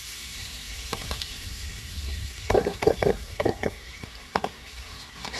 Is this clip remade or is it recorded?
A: remade